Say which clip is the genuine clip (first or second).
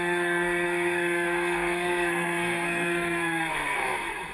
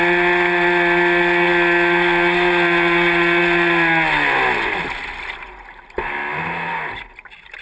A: second